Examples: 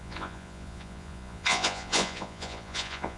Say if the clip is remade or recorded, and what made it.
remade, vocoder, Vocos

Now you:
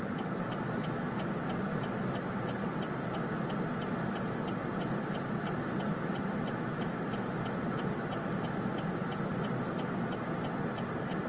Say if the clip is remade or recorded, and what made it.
recorded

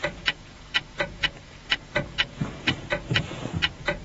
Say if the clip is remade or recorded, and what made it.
remade, vocoder, Vocos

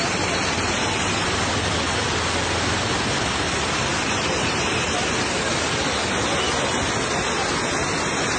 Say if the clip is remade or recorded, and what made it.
recorded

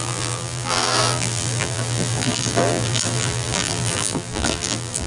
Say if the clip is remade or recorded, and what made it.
remade, vocoder, BigVGAN v2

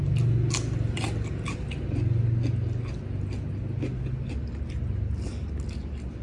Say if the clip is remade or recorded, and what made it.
recorded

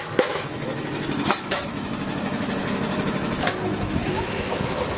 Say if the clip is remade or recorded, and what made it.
remade, autoencoder, DAC-VAE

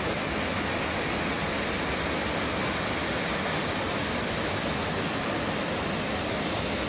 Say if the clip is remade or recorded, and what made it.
recorded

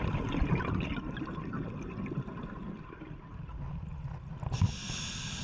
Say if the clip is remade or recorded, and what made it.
recorded